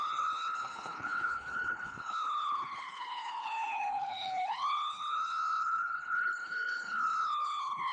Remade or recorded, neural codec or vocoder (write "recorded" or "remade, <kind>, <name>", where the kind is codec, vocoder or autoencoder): remade, codec, HILCodec